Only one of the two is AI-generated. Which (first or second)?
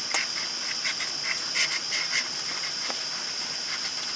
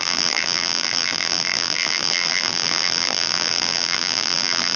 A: second